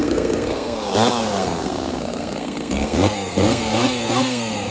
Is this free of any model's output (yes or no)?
no